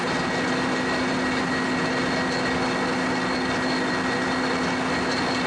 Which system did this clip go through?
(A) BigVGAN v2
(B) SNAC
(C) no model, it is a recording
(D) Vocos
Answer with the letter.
C